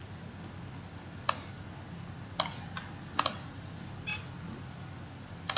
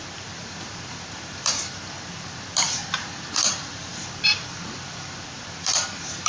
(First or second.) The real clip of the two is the first